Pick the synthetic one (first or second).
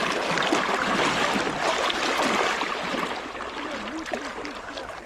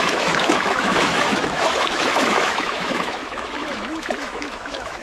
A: second